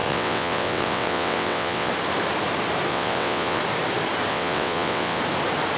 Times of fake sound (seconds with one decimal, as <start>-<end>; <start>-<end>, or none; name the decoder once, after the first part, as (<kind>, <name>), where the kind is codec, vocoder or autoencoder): 0.0-1.9 (vocoder, WaveNeXt); 2.9-3.6; 4.3-5.2